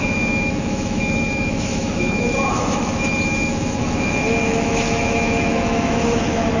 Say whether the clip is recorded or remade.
remade